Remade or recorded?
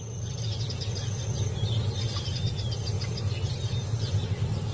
recorded